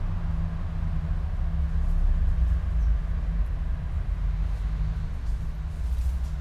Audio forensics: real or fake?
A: real